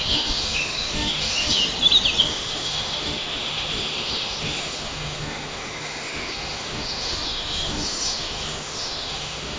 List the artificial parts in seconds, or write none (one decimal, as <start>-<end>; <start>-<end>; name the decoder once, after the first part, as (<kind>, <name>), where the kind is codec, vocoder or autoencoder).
0.0-1.6 (autoencoder, DAC-VAE); 2.2-9.6